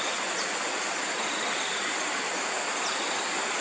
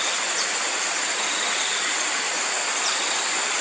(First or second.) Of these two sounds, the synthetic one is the second